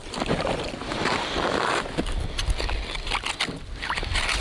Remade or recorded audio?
recorded